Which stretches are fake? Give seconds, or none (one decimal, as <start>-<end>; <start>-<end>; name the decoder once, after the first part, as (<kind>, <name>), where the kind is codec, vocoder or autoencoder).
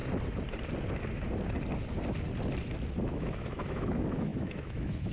3.1-5.1 (autoencoder, DAC-VAE)